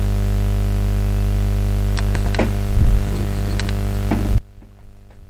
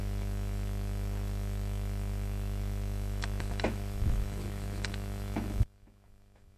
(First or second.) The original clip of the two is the first